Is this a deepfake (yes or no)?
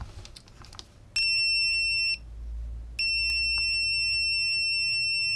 no